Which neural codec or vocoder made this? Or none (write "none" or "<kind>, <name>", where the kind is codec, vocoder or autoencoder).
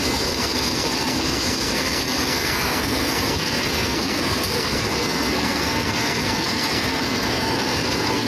codec, SNAC